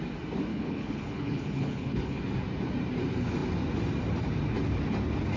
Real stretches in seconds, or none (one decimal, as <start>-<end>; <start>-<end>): 0.0-0.5; 2.2-5.4